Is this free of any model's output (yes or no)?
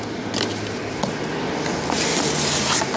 yes